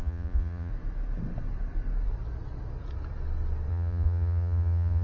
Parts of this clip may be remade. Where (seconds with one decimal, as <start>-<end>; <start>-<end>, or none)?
0.0-0.7; 3.7-5.0